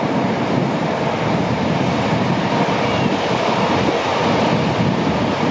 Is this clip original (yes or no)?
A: yes